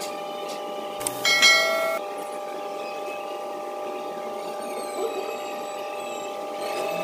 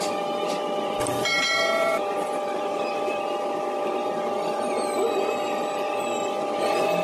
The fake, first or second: second